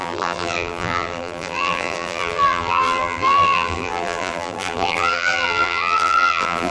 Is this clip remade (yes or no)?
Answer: yes